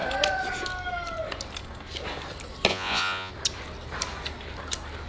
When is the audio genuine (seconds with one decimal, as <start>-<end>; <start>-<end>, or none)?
0.0-2.7; 3.3-5.1